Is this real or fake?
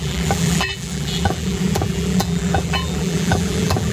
fake